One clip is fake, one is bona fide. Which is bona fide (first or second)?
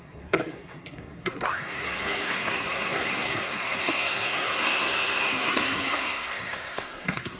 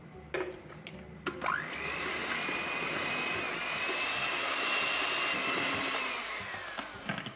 second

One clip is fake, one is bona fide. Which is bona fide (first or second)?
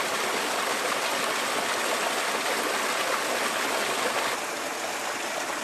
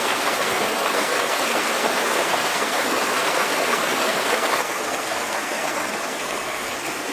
first